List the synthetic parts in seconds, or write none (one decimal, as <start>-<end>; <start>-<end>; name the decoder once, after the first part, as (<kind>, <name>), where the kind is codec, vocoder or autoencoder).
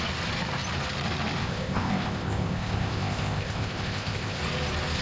1.4-4.4 (codec, ZipCodec)